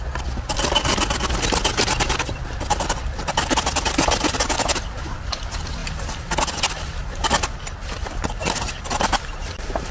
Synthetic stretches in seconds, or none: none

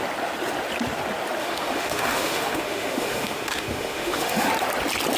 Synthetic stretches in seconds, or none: 1.4-4.5